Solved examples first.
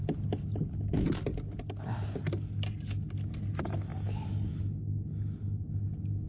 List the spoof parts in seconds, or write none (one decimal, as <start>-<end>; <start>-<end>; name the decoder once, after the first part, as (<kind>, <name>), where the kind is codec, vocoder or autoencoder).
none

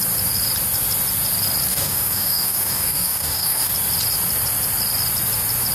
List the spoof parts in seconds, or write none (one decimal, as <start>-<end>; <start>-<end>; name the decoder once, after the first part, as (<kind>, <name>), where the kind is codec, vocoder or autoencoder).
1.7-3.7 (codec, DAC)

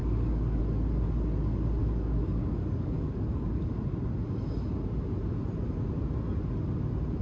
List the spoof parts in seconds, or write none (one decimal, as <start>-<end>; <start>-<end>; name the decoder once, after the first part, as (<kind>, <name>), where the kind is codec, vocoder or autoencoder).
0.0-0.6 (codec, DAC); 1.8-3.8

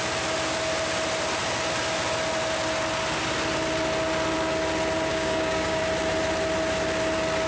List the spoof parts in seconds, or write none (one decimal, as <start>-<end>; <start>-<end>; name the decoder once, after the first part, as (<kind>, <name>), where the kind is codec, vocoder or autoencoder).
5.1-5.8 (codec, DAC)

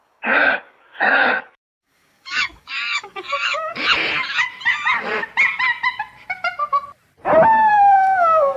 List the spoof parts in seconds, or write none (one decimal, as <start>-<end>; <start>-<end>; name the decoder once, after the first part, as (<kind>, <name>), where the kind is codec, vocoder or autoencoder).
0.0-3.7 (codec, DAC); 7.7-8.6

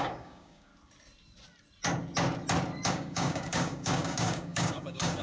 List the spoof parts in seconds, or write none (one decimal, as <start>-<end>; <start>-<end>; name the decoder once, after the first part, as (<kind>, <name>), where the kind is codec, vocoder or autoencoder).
0.0-0.7 (codec, DAC); 2.9-5.2